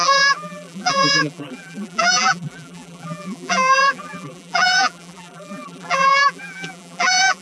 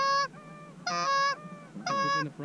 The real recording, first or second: second